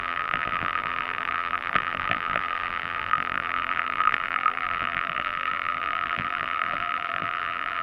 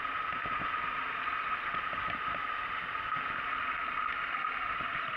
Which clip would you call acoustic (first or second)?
second